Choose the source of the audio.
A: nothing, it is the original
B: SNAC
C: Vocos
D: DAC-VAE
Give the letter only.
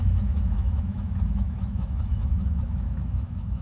D